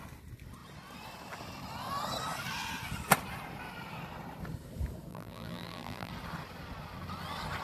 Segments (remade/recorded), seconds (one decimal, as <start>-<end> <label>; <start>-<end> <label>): 0.0-5.1 recorded; 5.1-6.1 remade; 6.1-7.6 recorded